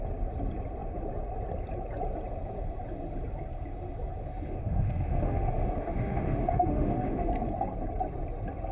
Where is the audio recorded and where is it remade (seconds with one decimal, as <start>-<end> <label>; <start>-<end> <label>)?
0.0-4.3 recorded; 4.3-7.3 remade; 7.3-8.7 recorded